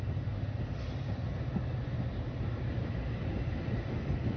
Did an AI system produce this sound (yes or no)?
no